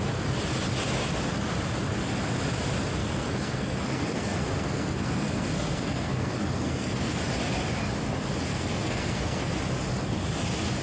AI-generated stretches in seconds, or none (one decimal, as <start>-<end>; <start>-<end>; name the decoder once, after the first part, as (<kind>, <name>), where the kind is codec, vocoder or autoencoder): 3.0-7.2 (codec, SNAC); 8.5-9.5